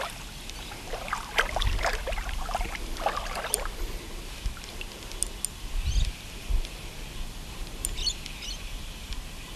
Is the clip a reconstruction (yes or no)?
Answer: no